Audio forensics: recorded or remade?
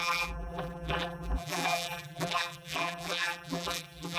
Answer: remade